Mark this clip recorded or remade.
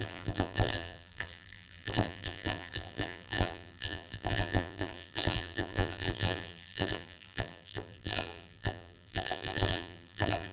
remade